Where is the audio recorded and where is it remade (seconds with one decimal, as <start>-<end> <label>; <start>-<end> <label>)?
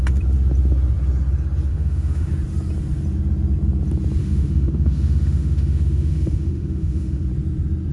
0.0-1.7 recorded; 1.7-2.3 remade; 2.3-4.2 recorded; 4.2-7.2 remade; 7.2-7.9 recorded